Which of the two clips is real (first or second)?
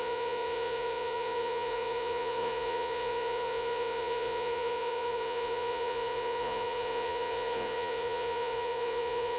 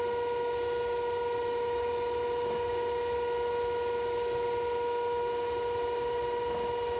second